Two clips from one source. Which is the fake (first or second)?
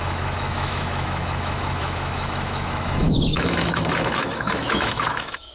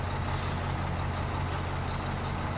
first